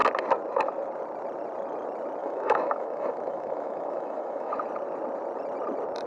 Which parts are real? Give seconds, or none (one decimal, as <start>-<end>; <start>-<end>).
0.0-2.2; 4.5-6.1

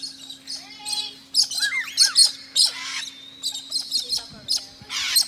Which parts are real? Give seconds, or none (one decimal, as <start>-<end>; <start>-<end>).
0.0-5.3